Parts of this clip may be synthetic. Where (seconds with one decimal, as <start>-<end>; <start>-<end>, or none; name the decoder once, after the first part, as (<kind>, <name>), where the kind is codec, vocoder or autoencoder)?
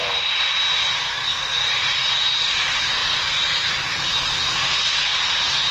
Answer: 1.1-1.6 (codec, SNAC)